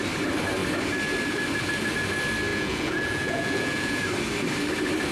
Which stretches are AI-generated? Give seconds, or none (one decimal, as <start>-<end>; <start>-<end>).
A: 2.5-4.0